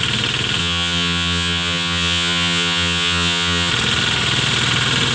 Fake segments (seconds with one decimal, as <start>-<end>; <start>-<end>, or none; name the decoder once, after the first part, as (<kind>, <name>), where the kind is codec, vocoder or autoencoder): 0.6-3.7 (vocoder, HiFi-GAN)